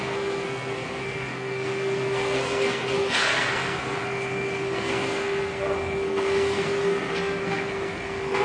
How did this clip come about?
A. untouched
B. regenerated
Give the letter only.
B